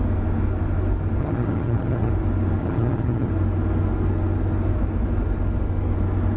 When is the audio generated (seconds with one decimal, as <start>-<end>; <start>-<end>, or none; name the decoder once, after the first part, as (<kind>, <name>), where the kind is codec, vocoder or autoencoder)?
1.2-2.1 (vocoder, HiFi-GAN); 2.6-3.3